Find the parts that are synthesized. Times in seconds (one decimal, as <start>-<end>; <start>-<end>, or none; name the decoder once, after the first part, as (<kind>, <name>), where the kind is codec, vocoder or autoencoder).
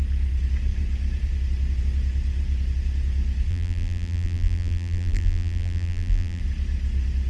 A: 3.5-6.4 (vocoder, BigVGAN v2)